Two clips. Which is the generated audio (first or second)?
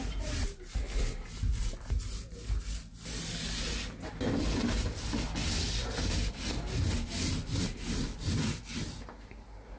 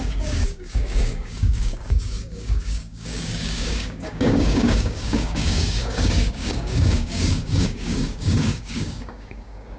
second